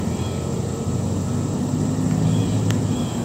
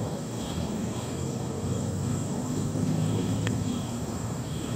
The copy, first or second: second